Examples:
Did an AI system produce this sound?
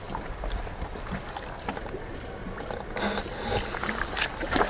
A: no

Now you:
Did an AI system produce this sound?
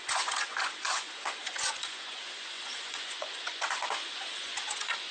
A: yes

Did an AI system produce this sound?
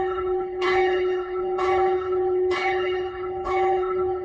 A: yes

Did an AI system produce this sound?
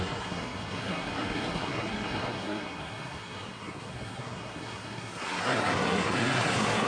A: yes